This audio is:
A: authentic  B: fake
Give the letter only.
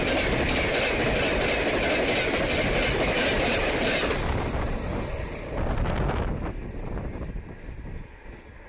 A